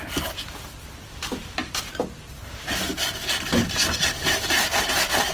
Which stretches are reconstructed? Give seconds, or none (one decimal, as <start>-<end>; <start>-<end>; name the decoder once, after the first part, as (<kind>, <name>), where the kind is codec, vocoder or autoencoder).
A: none